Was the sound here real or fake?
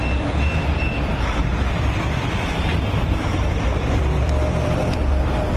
fake